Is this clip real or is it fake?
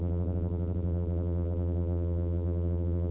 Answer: fake